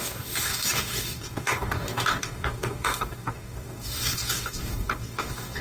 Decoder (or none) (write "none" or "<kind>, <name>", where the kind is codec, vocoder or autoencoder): codec, DAC